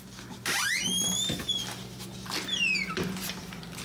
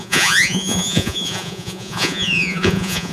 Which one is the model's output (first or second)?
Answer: second